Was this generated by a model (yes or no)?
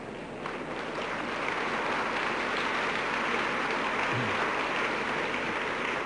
no